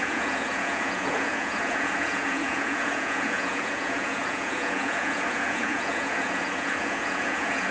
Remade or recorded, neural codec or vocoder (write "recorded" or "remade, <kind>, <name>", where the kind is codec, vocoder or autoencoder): remade, vocoder, Vocos